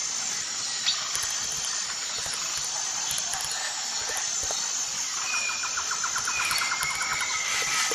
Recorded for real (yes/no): yes